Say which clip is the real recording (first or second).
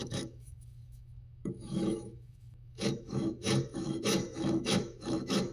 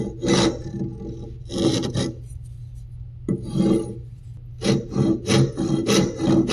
second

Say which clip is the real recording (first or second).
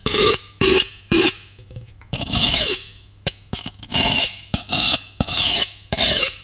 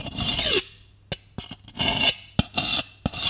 second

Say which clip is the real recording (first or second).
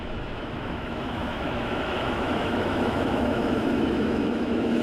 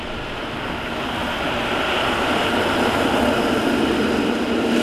second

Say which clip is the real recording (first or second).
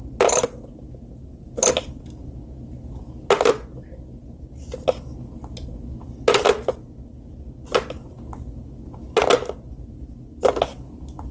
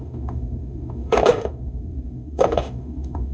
first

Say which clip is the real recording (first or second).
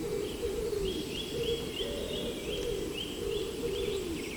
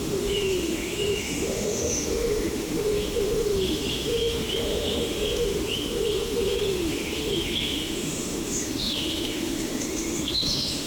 first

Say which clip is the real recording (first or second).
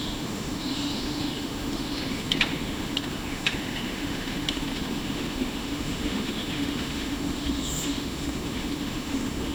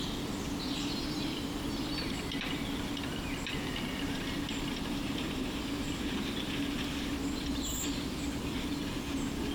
second